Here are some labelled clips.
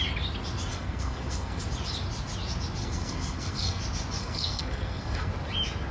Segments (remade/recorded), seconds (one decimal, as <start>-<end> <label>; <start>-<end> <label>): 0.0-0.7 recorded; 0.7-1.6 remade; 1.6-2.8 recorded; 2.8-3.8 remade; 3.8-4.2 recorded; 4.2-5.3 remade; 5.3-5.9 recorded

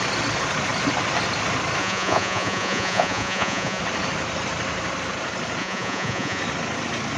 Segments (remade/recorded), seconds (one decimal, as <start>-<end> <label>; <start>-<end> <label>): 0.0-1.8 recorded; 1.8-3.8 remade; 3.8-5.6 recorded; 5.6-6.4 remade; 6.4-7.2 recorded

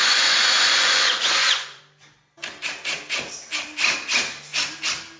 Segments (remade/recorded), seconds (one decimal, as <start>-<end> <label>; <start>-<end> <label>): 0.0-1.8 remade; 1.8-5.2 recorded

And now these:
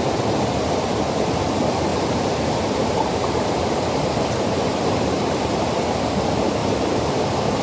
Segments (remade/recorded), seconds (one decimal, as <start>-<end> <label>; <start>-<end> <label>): 0.0-1.9 recorded; 1.9-5.8 remade; 5.8-6.6 recorded; 6.6-7.6 remade

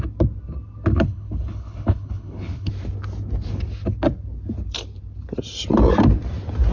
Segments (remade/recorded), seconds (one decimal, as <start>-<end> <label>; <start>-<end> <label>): 0.0-0.9 recorded; 0.9-2.7 remade; 2.7-6.7 recorded